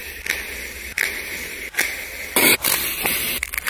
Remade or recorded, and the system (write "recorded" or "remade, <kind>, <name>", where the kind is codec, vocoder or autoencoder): recorded